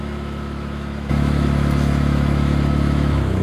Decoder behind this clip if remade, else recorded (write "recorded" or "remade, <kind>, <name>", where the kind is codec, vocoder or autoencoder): remade, autoencoder, DAC-VAE